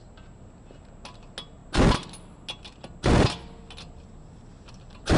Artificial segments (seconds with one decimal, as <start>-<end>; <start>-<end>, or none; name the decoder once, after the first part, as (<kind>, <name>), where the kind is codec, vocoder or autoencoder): none